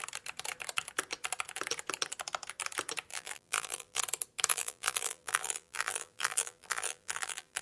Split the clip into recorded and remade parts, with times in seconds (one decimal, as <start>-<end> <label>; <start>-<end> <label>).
0.0-3.1 recorded; 3.1-4.0 remade; 4.0-4.5 recorded; 4.5-7.6 remade